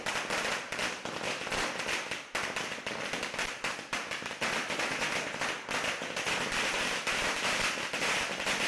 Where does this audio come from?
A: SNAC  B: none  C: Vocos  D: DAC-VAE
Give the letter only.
B